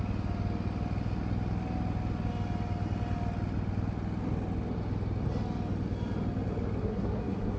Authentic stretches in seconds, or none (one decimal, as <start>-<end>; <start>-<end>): 0.0-6.8